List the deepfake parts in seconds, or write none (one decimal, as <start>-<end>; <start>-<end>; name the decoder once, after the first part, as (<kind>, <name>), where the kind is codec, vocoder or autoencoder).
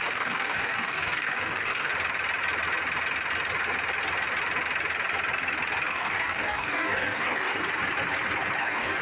0.0-1.9 (codec, DAC); 5.9-7.6; 8.6-9.0